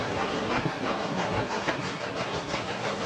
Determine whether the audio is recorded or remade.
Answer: remade